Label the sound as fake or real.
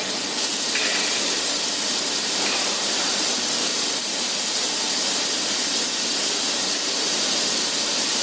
real